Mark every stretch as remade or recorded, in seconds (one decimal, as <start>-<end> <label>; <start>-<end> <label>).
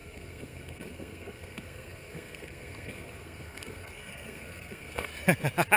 0.0-5.1 remade; 5.1-5.8 recorded